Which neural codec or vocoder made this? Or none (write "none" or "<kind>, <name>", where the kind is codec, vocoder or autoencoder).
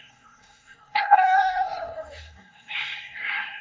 codec, SNAC